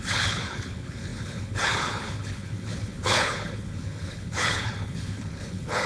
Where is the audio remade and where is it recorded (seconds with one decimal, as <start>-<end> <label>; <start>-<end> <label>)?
0.0-5.9 remade